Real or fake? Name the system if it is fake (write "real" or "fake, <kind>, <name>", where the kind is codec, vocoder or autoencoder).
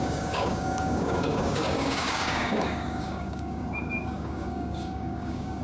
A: fake, codec, DAC